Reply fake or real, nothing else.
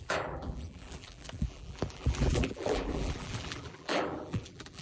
fake